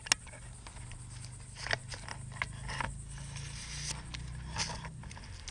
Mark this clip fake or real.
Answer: real